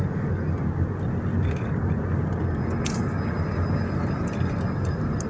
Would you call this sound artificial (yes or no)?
no